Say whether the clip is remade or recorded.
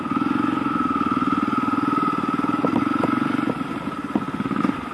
recorded